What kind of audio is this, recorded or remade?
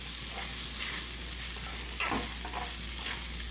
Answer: recorded